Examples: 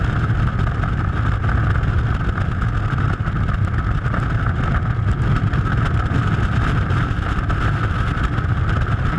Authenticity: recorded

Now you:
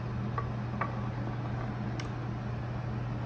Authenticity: recorded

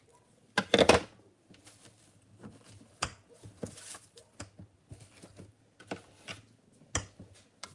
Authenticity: recorded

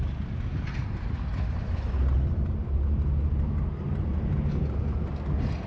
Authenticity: recorded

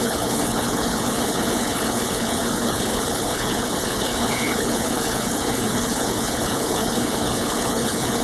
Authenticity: remade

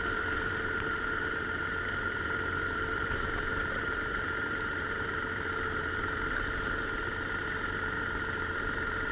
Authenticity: remade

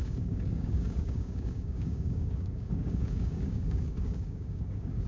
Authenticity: remade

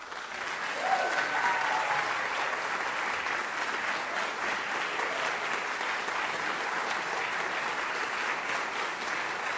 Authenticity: recorded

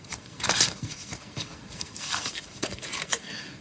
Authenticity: remade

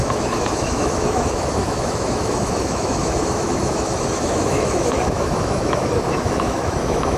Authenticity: remade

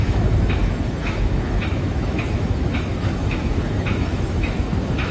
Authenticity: remade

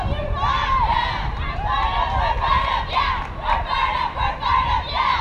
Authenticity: recorded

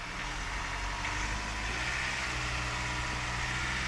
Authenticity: recorded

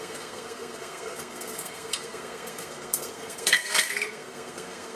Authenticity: remade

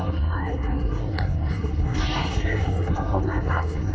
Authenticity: remade